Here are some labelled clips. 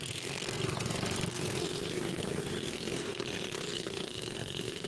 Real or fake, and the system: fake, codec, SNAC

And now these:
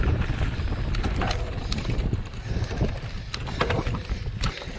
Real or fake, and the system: real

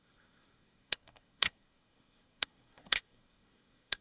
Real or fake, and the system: fake, codec, SNAC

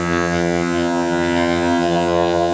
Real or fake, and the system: fake, vocoder, HiFi-GAN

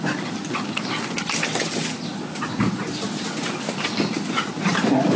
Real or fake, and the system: real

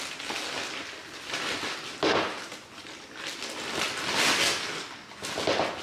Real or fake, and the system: real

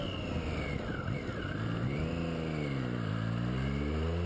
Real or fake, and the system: real